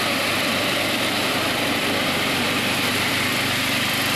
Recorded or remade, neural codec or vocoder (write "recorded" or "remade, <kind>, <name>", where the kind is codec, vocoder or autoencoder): remade, vocoder, BigVGAN v2